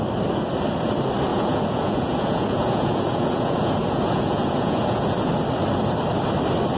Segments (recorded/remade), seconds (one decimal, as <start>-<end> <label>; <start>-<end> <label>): 0.0-1.3 recorded; 1.3-5.3 remade; 5.3-6.8 recorded